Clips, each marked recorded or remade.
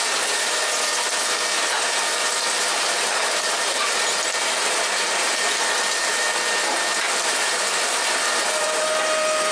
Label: remade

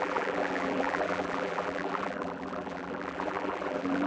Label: remade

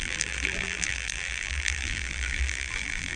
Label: remade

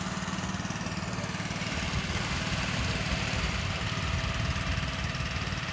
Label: recorded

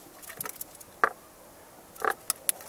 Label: recorded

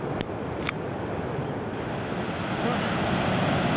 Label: recorded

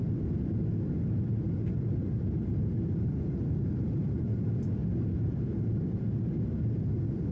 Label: recorded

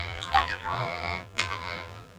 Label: remade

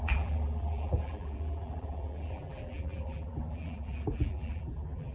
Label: remade